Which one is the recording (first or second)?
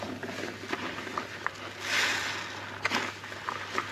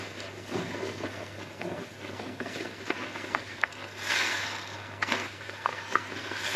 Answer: first